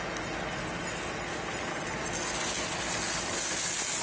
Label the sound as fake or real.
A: real